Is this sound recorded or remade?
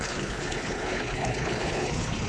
remade